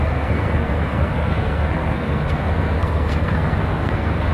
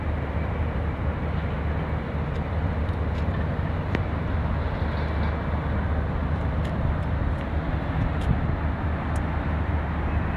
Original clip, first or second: second